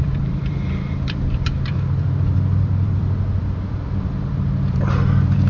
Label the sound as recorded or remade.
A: remade